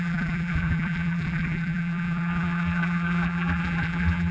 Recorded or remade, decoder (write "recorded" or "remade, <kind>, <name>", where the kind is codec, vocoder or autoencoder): remade, vocoder, BigVGAN v2